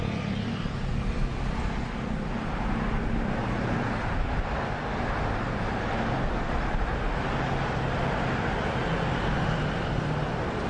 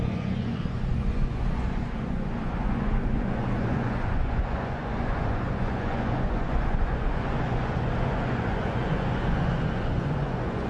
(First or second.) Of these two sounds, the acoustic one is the first